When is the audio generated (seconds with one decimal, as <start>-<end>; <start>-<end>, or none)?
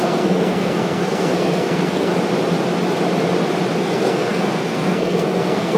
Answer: 0.0-2.1; 3.8-5.8